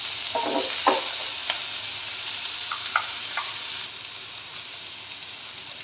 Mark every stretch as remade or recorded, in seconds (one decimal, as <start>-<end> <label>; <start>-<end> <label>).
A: 0.0-1.4 recorded; 1.4-3.7 remade; 3.7-5.8 recorded